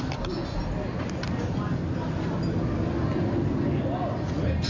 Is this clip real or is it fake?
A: real